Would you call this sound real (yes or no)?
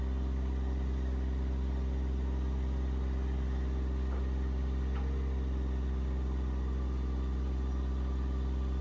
yes